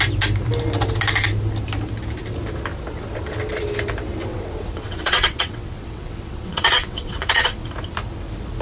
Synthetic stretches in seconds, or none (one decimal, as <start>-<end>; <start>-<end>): 4.3-7.7